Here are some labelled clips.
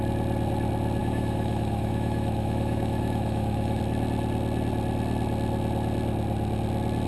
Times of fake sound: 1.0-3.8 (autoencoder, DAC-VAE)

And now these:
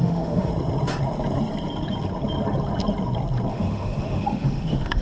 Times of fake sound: 0.0-0.5 (autoencoder, DAC-VAE); 3.5-5.0